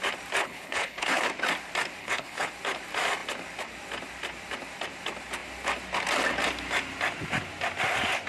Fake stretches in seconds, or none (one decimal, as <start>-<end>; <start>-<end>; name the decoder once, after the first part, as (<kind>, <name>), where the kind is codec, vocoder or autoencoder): 0.4-1.2 (codec, HILCodec); 2.0-2.5